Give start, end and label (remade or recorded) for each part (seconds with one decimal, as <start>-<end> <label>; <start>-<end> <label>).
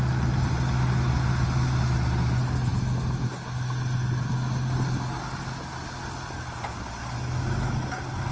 0.0-8.3 recorded